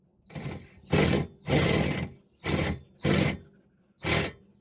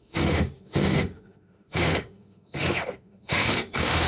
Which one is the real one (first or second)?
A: first